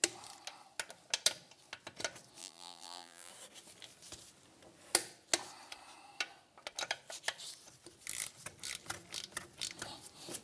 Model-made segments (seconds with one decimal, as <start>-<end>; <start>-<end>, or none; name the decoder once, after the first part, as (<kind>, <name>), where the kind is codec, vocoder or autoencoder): 2.4-3.3 (vocoder, BigVGAN v2)